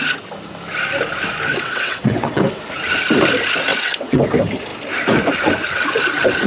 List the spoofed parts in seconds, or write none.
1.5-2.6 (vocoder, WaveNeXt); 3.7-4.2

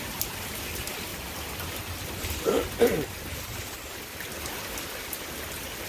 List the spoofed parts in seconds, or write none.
none

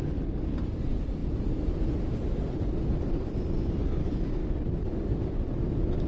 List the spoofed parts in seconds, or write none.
none

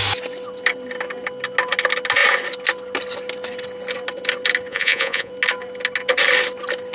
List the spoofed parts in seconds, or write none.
4.7-5.3 (vocoder, Vocos)